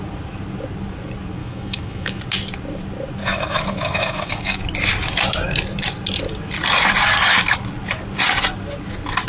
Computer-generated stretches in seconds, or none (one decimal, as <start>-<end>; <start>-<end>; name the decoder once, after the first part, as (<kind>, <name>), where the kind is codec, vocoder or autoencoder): 1.4-2.2 (autoencoder, DAC-VAE); 3.2-4.6